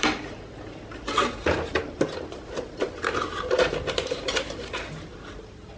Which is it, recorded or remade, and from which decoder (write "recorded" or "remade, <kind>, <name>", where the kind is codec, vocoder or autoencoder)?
remade, vocoder, BigVGAN v2